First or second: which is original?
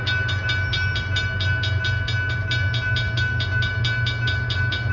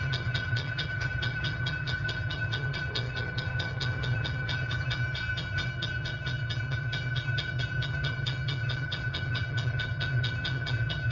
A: first